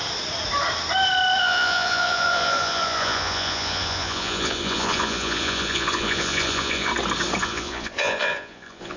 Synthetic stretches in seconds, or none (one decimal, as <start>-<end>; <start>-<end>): 1.4-6.9; 7.4-9.0

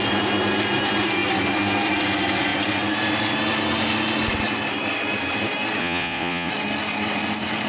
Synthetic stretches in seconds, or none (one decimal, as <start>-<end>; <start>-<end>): 5.8-6.5

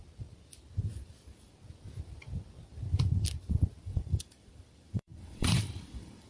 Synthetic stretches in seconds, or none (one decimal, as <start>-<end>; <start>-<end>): 3.8-6.3

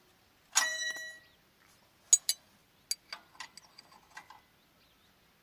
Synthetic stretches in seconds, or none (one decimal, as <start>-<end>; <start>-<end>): none

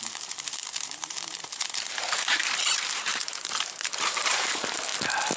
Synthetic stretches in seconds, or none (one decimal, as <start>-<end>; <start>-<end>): 0.0-4.9

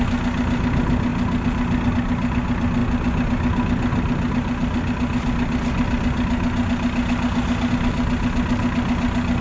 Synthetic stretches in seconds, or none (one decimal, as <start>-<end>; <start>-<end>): none

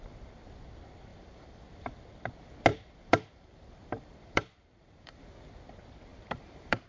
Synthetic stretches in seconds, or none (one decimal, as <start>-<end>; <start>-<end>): 1.1-1.9; 2.7-5.2; 6.1-6.9

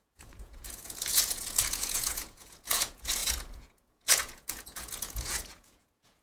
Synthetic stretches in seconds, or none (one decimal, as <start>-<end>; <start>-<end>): 0.0-6.2